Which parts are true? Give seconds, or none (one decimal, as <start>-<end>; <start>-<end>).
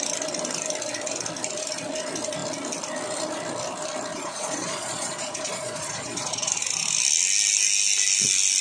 0.0-4.1; 6.5-8.6